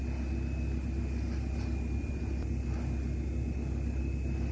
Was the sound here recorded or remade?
recorded